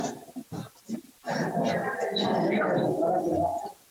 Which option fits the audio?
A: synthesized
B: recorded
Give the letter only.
A